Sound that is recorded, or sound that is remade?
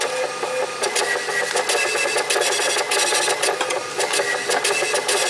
recorded